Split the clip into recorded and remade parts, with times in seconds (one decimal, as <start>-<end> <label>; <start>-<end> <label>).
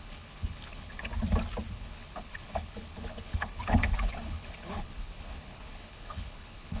0.0-1.1 remade; 1.1-1.7 recorded; 1.7-6.8 remade